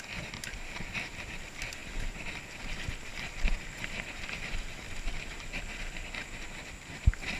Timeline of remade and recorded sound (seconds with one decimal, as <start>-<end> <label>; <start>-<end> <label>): 0.0-7.4 recorded